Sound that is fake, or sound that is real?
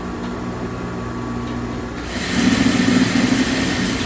real